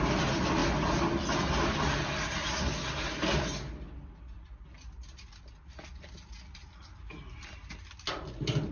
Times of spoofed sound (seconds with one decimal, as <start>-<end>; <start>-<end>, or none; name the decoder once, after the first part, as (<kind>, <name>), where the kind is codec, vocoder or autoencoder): none